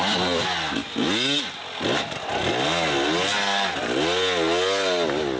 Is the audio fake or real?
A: real